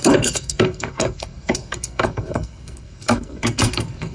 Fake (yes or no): yes